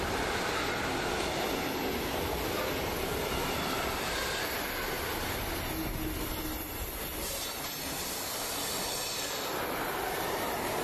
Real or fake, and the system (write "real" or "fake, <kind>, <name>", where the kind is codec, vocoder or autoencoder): real